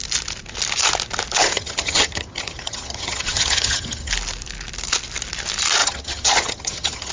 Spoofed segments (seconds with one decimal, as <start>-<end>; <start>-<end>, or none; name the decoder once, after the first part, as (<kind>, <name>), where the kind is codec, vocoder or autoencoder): 1.4-4.1 (vocoder, HiFi-GAN); 5.8-7.1